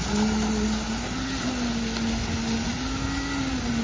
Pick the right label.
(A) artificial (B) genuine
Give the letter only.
B